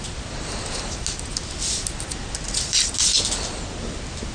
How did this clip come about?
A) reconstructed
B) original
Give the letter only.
B